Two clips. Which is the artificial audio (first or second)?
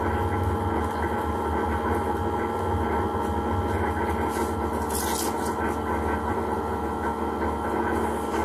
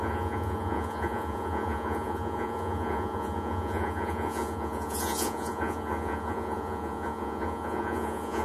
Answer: second